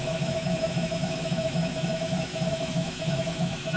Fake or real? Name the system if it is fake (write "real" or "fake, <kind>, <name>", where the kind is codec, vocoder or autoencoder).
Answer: fake, autoencoder, DAC-VAE